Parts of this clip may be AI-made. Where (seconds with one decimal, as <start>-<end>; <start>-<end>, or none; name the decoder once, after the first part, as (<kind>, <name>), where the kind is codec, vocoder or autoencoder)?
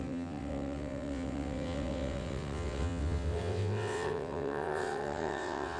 0.0-5.8 (vocoder, WaveNeXt)